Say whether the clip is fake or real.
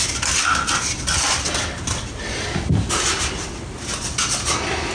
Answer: real